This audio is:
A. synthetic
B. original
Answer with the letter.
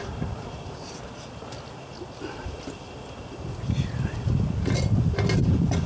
B